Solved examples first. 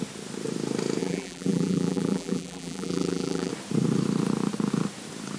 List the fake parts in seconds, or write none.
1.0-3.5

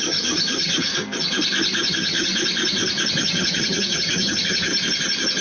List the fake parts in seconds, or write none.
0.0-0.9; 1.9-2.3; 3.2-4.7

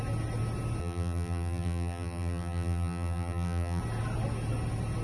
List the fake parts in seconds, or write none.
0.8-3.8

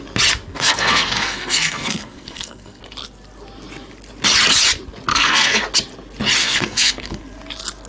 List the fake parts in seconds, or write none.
0.5-2.8; 5.1-5.6; 6.4-7.2